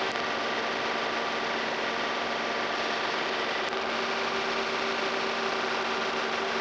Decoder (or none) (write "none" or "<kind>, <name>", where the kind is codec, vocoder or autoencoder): none